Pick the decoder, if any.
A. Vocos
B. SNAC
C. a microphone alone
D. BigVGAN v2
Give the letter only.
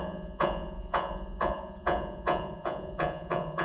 A